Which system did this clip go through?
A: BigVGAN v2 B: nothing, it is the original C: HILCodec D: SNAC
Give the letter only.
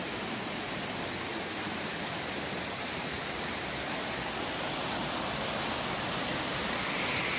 B